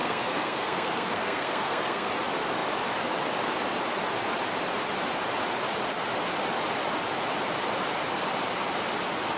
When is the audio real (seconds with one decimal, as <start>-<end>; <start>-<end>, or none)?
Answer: 2.1-9.4